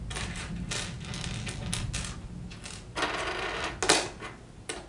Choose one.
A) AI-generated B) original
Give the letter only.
B